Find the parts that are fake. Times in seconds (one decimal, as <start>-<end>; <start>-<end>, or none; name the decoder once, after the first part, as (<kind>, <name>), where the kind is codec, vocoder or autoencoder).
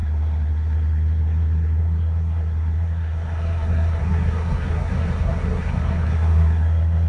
0.0-7.1 (codec, SNAC)